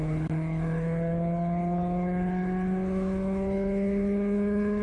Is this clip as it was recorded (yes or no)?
no